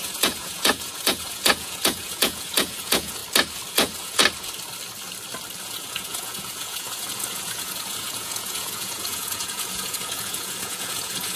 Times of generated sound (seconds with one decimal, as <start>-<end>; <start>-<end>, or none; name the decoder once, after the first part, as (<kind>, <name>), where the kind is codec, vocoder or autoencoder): 0.0-3.2 (vocoder, Vocos); 3.7-4.2; 5.6-11.4